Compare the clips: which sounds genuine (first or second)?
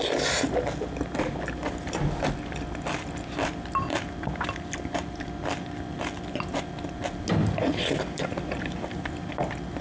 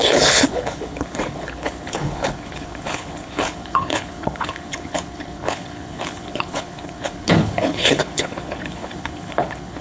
first